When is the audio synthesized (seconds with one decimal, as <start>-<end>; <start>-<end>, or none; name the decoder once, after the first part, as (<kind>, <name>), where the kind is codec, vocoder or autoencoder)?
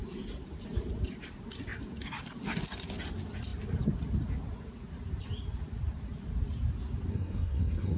7.1-8.0 (codec, SNAC)